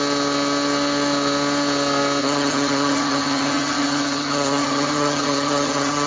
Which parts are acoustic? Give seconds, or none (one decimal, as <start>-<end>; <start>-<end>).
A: 0.0-2.2